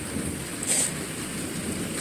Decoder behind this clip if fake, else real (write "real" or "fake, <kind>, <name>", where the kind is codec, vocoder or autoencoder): real